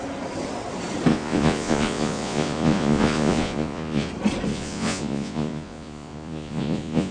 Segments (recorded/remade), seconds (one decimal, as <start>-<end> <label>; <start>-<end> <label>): 0.0-1.1 recorded; 1.1-4.1 remade; 4.1-4.5 recorded; 4.5-7.1 remade